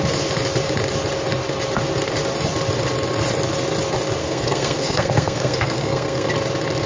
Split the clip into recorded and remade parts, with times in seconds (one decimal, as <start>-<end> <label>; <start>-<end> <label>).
0.0-4.2 recorded; 4.2-6.3 remade; 6.3-6.9 recorded